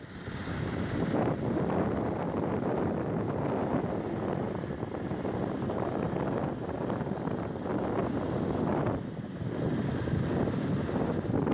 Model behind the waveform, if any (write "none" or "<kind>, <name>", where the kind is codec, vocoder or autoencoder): none